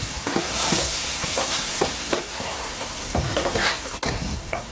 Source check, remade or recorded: remade